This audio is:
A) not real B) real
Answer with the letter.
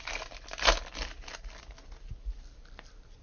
B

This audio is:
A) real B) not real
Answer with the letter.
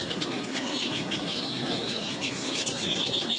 B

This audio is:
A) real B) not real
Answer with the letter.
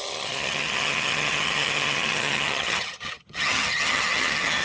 B